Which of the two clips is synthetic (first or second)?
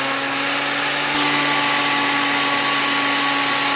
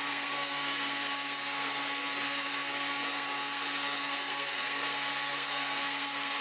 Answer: second